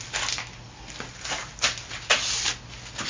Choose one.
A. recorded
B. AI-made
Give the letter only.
A